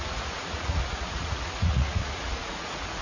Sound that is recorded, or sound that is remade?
remade